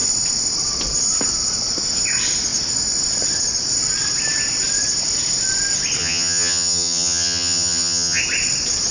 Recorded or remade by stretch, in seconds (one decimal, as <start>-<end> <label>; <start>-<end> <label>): 0.0-6.0 recorded; 6.0-8.2 remade; 8.2-8.9 recorded